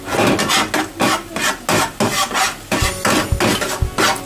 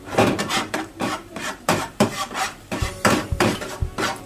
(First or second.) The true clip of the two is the first